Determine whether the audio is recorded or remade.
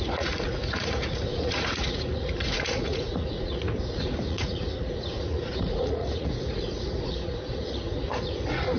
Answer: remade